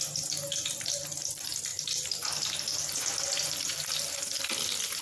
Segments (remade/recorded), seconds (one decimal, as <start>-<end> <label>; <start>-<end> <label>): 0.0-1.7 recorded; 1.7-2.5 remade; 2.5-5.0 recorded